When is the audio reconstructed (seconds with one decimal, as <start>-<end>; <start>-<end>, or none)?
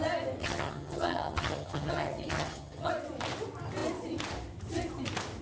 0.4-2.9